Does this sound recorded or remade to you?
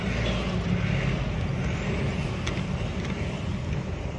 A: recorded